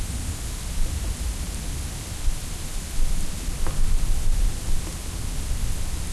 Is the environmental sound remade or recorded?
recorded